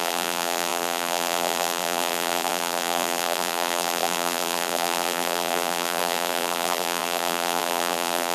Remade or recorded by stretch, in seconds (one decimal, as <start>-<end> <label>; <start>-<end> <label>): 0.0-8.3 remade